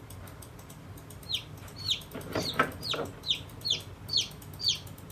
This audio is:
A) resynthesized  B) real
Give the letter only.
B